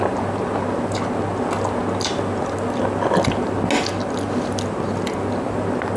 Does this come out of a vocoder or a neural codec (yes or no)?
no